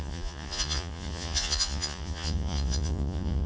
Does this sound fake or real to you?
fake